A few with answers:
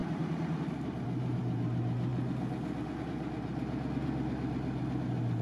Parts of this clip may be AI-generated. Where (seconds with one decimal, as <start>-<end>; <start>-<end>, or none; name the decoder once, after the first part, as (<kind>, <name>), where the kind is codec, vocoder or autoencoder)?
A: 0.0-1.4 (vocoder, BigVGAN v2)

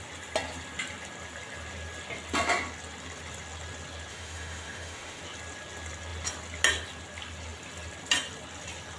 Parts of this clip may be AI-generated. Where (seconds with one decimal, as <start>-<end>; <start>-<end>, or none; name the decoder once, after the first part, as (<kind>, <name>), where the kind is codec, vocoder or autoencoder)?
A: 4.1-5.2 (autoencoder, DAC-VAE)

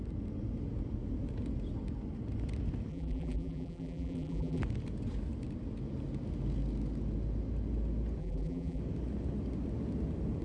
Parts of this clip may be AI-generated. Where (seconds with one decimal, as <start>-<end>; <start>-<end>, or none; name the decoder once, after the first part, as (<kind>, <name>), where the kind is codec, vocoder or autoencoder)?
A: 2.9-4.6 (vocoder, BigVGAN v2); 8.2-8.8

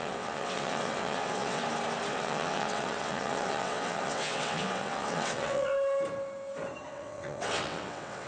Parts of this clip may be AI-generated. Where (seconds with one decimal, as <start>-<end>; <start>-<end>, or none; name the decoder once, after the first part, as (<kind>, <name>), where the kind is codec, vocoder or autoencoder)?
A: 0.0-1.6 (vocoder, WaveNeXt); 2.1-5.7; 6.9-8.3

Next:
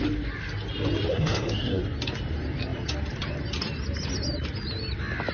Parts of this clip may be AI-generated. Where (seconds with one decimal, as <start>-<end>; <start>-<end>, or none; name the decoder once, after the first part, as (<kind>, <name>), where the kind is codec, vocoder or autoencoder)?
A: 1.1-1.8 (codec, SNAC)

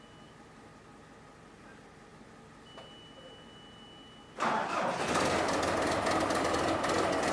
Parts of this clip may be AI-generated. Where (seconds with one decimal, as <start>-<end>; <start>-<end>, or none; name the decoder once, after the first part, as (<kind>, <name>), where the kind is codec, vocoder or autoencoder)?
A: none

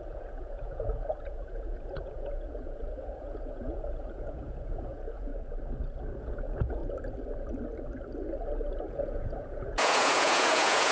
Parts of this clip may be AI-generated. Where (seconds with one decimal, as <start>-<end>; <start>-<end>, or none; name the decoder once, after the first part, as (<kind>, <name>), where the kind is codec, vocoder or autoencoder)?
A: 0.0-5.3 (vocoder, Vocos); 6.2-6.8; 8.9-10.9

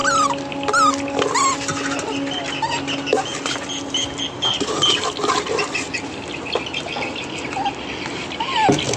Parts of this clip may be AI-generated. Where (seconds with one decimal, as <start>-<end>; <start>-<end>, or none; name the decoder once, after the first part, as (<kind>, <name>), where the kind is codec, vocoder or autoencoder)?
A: none